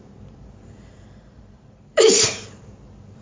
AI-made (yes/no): yes